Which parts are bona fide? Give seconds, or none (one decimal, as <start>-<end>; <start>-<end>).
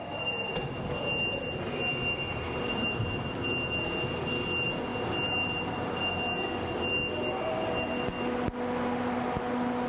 0.0-2.3; 3.0-4.9; 6.1-9.9